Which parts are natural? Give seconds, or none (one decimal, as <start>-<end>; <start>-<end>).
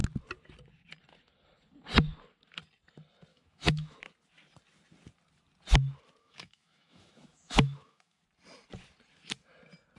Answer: 0.0-3.3; 4.0-6.2; 8.2-10.0